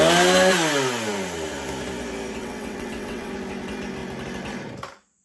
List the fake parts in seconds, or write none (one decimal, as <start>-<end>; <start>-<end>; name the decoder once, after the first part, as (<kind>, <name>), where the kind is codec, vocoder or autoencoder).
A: 2.4-3.3 (vocoder, WaveNeXt)